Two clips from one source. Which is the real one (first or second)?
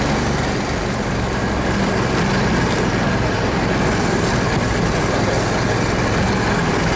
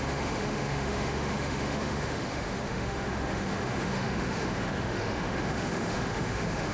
first